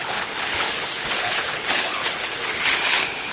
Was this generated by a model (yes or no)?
yes